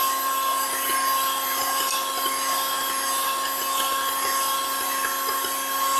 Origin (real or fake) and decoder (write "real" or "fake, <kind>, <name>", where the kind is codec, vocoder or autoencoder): real